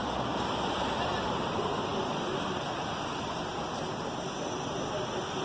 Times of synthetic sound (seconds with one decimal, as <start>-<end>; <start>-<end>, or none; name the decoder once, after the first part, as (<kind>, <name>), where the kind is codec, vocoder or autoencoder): none